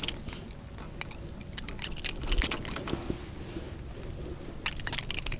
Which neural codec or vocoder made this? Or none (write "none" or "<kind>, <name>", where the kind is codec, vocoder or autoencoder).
none